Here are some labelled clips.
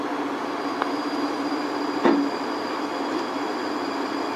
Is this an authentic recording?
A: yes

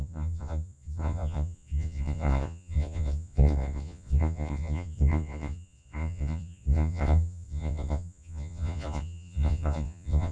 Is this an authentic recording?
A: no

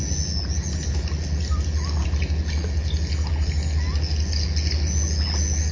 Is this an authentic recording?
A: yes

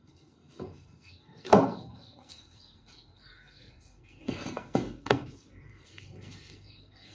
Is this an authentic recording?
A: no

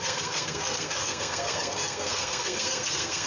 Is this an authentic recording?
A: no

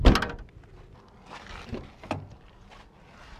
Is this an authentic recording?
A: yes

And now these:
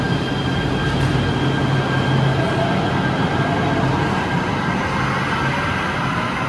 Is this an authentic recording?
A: yes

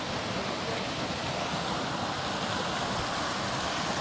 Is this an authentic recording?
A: yes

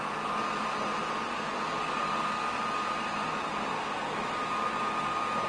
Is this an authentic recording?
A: yes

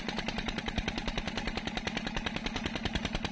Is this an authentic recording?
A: yes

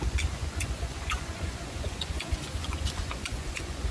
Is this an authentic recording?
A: no